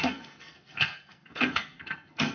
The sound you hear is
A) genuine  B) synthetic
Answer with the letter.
B